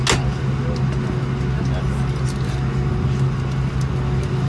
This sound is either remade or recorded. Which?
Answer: recorded